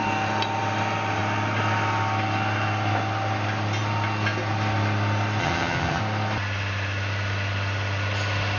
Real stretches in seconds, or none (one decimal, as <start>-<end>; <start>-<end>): 0.0-5.4; 6.0-8.6